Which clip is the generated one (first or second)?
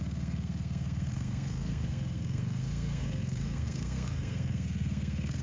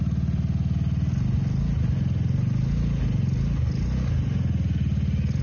first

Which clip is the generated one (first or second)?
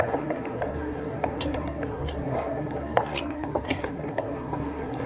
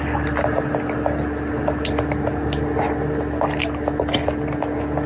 first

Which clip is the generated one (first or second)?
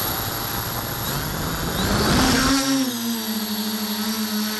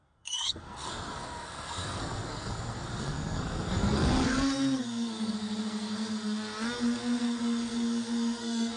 second